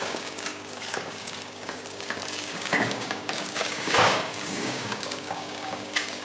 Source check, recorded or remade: remade